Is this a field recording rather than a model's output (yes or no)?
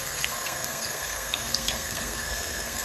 no